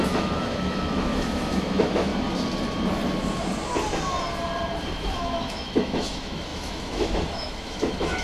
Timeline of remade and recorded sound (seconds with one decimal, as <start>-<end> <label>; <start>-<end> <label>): 0.0-2.1 remade; 2.1-4.9 recorded; 4.9-8.2 remade